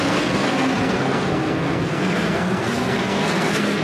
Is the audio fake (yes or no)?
yes